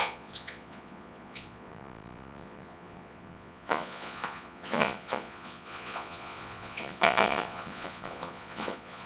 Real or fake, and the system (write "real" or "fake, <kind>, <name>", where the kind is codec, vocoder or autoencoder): fake, vocoder, Vocos